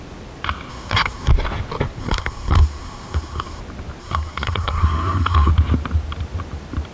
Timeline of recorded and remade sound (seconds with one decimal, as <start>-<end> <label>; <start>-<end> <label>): 0.0-0.7 recorded; 0.7-1.3 remade; 1.3-2.0 recorded; 2.0-3.6 remade; 3.6-4.0 recorded; 4.0-5.5 remade; 5.5-6.9 recorded